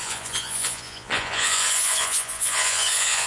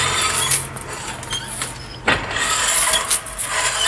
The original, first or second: second